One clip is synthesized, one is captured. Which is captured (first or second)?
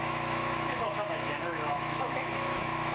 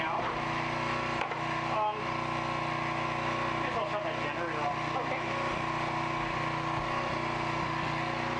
second